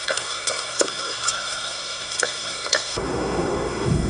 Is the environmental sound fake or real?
fake